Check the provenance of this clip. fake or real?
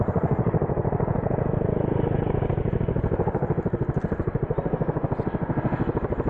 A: real